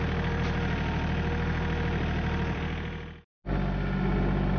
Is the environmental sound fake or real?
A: real